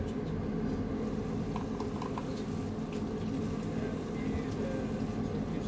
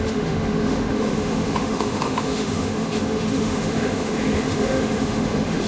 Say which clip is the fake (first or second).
second